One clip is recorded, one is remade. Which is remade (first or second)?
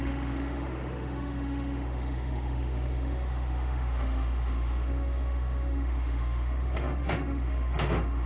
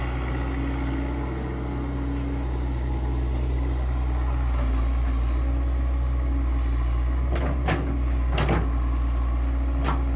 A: first